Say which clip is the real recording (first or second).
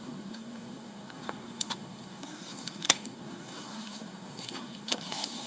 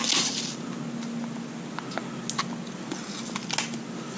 second